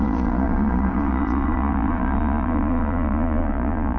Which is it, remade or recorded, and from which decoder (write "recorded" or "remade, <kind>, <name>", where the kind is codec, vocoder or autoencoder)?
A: remade, vocoder, Vocos